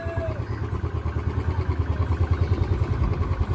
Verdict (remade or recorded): recorded